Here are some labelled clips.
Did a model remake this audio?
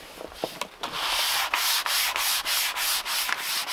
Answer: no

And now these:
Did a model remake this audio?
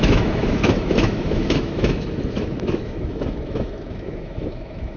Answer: yes